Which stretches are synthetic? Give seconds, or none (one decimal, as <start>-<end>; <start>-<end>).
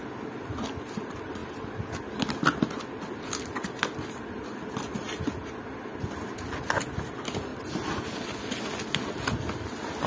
none